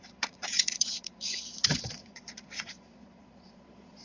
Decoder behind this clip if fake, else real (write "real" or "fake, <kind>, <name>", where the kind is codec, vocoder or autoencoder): fake, vocoder, Vocos